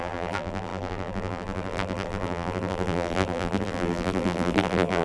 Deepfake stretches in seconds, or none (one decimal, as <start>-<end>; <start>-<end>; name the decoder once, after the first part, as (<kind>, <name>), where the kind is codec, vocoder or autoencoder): 0.0-5.0 (vocoder, BigVGAN v2)